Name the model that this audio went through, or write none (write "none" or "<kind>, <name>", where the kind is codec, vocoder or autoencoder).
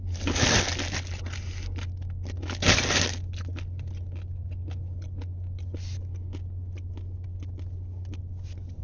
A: none